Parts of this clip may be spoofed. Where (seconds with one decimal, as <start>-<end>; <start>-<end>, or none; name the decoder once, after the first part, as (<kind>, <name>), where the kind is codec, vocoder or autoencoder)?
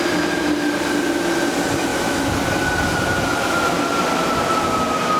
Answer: 1.9-2.4 (autoencoder, DAC-VAE)